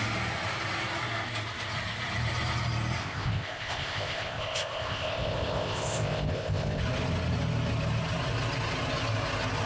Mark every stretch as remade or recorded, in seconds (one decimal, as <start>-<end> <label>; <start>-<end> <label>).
0.0-3.0 recorded; 3.0-6.8 remade; 6.8-9.7 recorded